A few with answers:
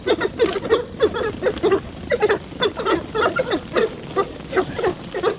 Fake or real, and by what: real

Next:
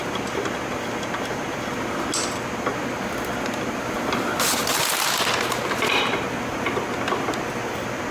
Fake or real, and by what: real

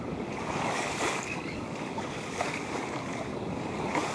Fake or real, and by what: fake, codec, DAC